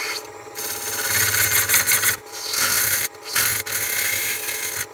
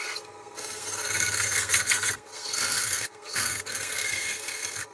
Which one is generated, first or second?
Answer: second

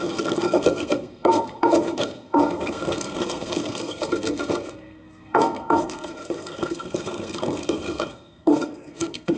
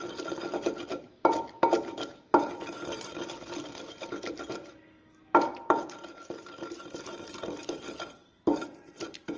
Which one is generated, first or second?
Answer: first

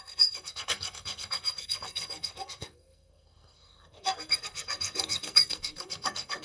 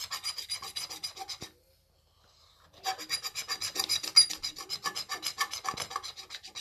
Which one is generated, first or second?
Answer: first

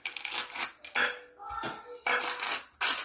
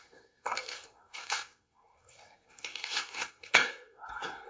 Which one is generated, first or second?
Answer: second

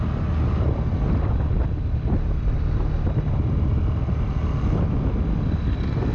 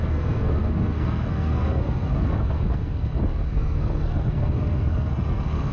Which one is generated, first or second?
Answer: second